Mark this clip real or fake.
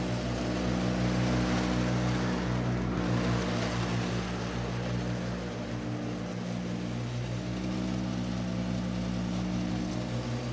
real